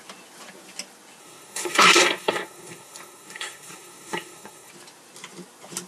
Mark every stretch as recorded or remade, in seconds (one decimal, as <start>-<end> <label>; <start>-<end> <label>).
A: 0.0-1.2 recorded; 1.2-4.7 remade; 4.7-5.9 recorded